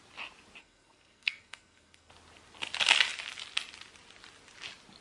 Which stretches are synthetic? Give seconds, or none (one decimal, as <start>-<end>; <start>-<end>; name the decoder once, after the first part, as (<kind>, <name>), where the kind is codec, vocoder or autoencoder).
0.6-2.1 (codec, SNAC)